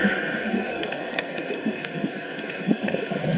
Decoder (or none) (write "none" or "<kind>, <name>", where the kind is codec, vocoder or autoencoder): codec, SNAC